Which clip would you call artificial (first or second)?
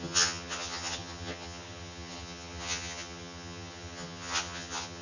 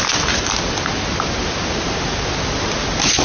first